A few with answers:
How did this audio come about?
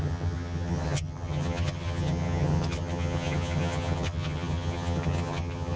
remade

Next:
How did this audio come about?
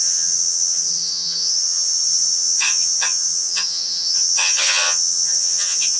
remade